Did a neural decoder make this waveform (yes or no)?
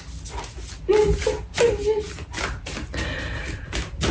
no